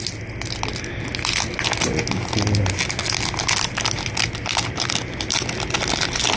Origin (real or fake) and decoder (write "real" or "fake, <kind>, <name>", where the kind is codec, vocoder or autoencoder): real